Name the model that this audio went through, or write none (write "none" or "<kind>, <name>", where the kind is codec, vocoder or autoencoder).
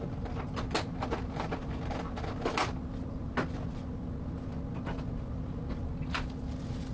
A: none